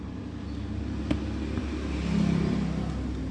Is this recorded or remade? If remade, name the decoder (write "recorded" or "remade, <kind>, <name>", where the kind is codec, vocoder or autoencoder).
recorded